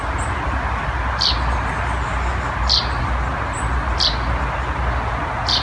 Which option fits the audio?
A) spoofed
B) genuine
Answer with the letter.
B